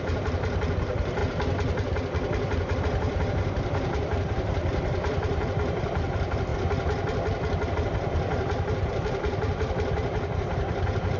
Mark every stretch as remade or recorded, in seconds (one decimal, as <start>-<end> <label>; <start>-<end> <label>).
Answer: 0.0-1.2 remade; 1.2-2.8 recorded; 2.8-6.5 remade; 6.5-7.7 recorded; 7.7-11.2 remade